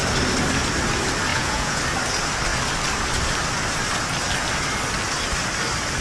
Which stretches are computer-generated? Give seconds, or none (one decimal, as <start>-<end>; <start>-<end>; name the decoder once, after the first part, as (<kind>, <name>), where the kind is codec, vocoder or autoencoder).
1.3-1.8 (vocoder, Vocos)